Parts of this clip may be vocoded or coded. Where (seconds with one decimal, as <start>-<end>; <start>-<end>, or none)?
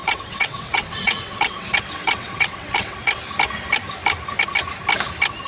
0.0-3.2